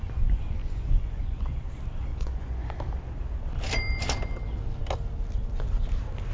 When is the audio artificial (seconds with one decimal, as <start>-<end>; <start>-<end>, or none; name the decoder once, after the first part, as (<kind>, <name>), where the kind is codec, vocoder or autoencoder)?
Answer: 0.6-1.6 (vocoder, Vocos); 2.1-2.7